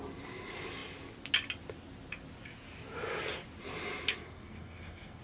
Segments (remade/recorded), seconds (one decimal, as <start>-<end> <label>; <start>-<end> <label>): 0.0-4.2 recorded; 4.2-5.2 remade